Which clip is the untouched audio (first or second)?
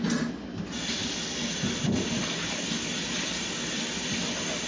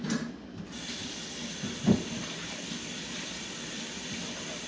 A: first